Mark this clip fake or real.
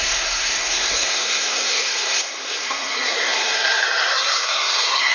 fake